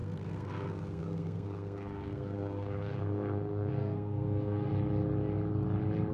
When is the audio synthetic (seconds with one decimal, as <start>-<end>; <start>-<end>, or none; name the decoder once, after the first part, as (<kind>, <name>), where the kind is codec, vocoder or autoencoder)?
0.0-4.7 (codec, SNAC)